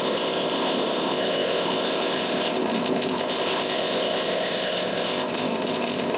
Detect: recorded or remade remade